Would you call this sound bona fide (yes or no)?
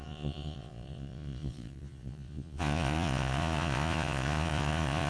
no